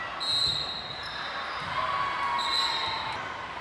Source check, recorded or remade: recorded